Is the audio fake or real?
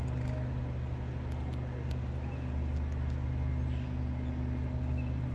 real